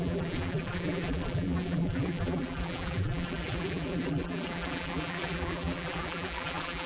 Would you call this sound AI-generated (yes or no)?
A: yes